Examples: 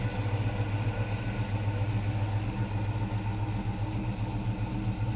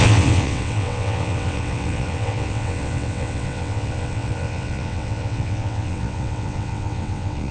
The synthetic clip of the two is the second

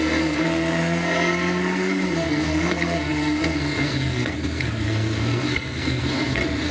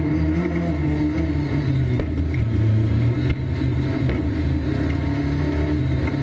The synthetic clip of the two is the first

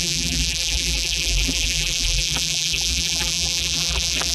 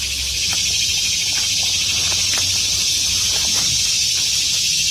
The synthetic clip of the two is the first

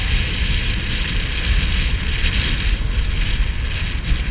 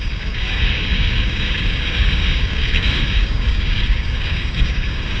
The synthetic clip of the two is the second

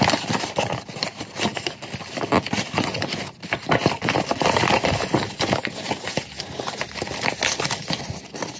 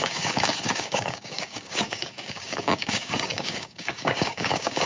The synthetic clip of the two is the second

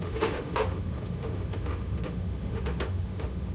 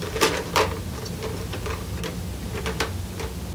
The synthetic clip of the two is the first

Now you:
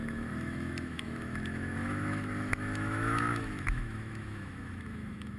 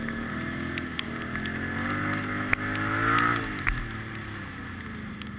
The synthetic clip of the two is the first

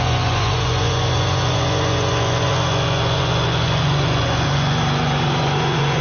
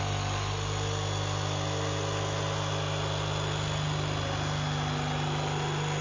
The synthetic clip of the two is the first